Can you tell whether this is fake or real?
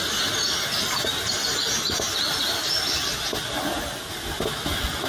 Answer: real